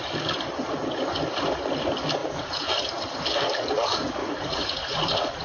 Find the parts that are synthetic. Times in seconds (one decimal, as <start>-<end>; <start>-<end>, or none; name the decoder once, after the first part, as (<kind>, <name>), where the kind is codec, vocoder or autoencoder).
2.2-2.8 (vocoder, Vocos); 4.2-5.4